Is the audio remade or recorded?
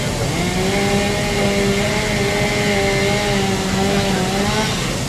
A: recorded